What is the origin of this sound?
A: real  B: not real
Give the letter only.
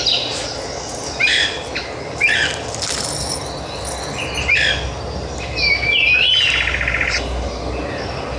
A